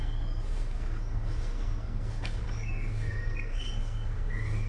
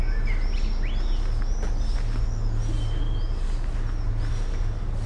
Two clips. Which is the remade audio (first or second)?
first